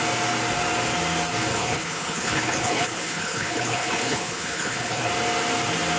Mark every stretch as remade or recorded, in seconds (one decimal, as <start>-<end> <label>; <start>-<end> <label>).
0.0-1.5 recorded; 1.5-5.1 remade; 5.1-6.0 recorded